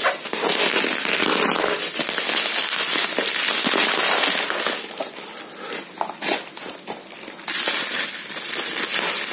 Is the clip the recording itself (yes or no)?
yes